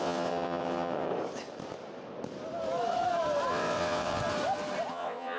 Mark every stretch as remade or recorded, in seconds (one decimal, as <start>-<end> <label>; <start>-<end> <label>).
0.0-1.1 remade; 1.1-3.5 recorded; 3.5-4.2 remade; 4.2-4.9 recorded; 4.9-5.4 remade